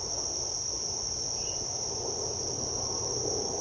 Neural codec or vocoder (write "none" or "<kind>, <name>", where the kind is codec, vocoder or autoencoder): none